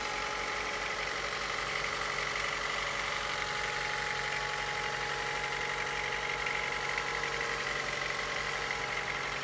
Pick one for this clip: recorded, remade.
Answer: recorded